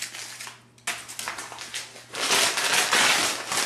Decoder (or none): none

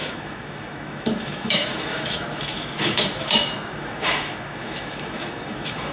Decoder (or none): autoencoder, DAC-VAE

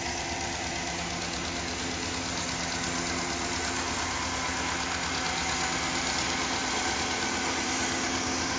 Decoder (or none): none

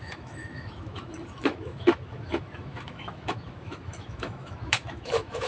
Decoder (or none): autoencoder, DAC-VAE